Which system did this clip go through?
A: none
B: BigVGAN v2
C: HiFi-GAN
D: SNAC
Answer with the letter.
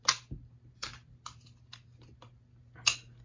A